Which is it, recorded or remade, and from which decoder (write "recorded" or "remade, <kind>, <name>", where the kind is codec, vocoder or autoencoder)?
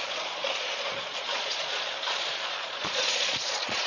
remade, vocoder, Vocos